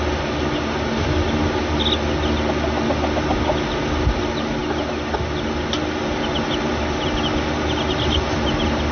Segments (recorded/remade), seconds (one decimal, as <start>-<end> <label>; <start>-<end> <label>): 0.0-8.9 recorded